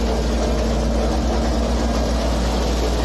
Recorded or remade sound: recorded